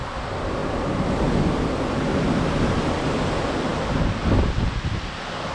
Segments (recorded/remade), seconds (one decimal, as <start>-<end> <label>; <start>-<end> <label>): 0.0-5.5 recorded